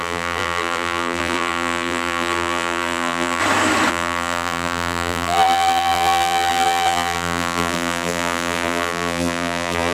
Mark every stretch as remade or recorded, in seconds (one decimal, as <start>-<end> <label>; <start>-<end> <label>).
0.0-3.4 remade; 3.4-3.9 recorded; 3.9-9.9 remade